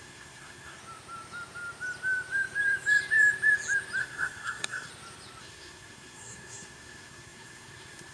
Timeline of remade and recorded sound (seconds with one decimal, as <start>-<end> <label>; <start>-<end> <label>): 0.0-0.8 remade; 0.8-4.0 recorded; 4.0-4.9 remade; 4.9-5.4 recorded; 5.4-8.1 remade